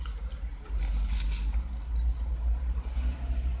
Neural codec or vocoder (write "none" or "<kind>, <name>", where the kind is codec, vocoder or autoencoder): none